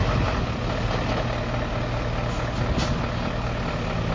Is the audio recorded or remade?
recorded